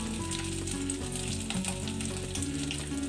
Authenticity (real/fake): real